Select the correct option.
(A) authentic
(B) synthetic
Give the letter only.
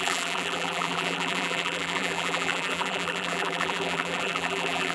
B